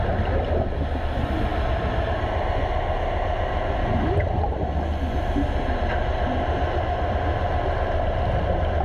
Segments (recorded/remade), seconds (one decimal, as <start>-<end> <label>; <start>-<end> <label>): 0.0-8.8 recorded